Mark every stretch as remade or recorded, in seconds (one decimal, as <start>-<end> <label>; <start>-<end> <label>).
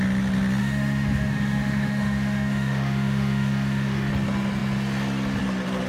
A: 0.0-0.6 recorded; 0.6-4.1 remade; 4.1-5.9 recorded